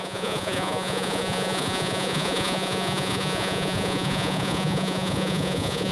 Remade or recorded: remade